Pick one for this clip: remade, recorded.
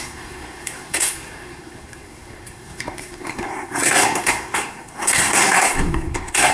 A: remade